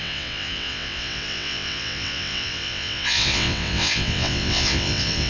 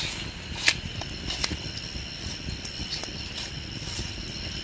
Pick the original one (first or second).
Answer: second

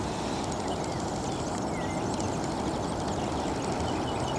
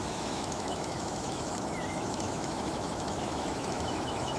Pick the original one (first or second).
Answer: first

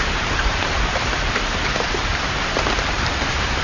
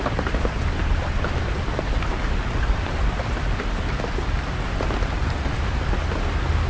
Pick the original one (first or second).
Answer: second